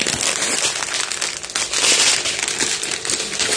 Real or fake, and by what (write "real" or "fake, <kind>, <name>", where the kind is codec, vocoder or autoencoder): real